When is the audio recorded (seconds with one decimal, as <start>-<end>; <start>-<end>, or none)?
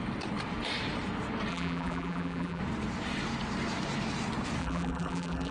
0.0-1.5; 2.6-4.6